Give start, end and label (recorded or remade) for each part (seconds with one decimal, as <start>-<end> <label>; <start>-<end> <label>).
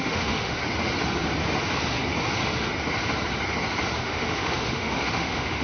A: 0.0-0.6 remade; 0.6-4.0 recorded; 4.0-5.6 remade